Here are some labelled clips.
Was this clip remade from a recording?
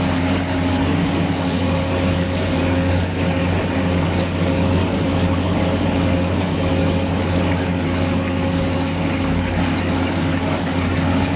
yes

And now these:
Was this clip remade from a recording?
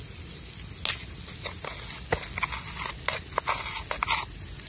no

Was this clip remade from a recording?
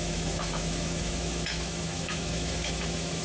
yes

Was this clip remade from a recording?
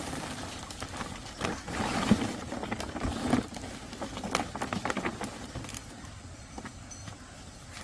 no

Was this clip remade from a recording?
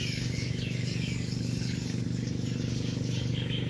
yes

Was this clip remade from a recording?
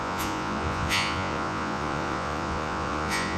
yes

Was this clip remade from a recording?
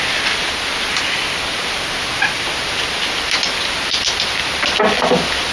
no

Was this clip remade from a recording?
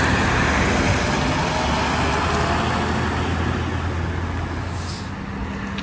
no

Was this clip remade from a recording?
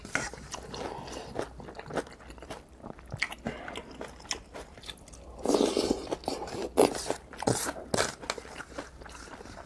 no